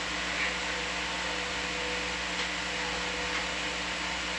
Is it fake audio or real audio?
real